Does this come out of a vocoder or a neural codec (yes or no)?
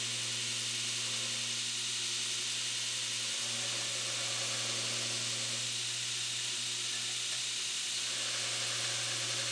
no